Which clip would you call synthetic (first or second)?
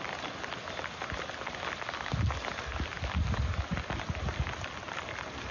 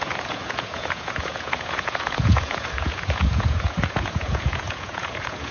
second